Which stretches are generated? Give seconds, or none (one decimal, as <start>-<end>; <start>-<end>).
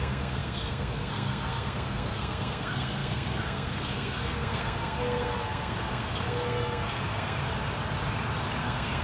0.0-7.4; 8.6-9.0